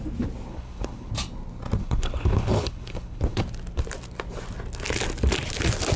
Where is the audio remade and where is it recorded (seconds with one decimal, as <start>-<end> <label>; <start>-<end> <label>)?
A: 0.0-0.5 recorded; 0.5-1.1 remade; 1.1-1.8 recorded; 1.8-3.4 remade; 3.4-6.0 recorded